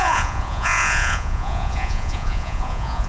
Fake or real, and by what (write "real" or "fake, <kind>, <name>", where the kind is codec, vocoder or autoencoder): fake, vocoder, Vocos